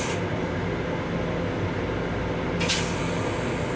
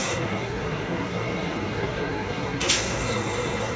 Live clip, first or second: first